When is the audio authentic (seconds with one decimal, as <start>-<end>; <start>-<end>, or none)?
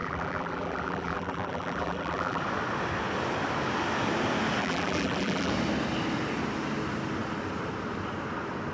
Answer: 2.4-4.6; 5.5-8.7